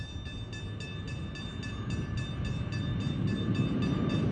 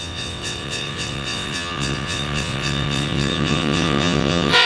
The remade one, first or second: second